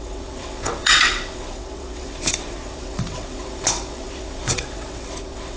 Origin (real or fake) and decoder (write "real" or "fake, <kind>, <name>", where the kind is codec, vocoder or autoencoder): fake, vocoder, WaveNeXt